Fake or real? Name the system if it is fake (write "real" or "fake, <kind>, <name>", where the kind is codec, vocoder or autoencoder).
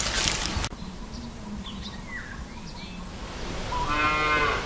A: real